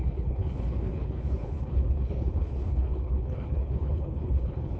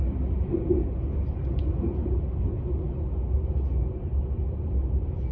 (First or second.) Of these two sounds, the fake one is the first